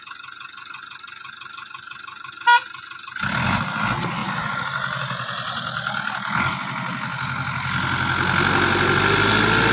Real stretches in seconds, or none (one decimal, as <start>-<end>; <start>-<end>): 0.0-9.7

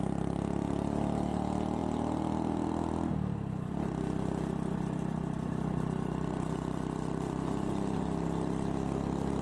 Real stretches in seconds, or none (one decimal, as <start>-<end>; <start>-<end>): 0.0-9.4

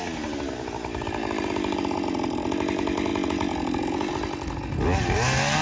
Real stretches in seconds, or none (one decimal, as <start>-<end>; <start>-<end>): 0.0-5.6

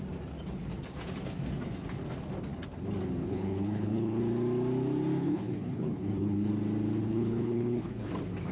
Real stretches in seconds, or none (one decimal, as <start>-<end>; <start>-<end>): 0.0-3.2; 4.2-5.2; 6.5-7.0; 8.1-8.5

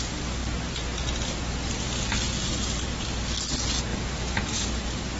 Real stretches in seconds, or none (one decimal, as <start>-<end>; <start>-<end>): 0.0-3.9; 4.7-5.2

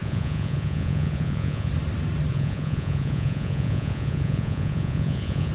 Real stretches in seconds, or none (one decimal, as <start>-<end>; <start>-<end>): 1.7-2.3